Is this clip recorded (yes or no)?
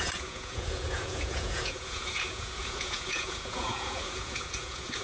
no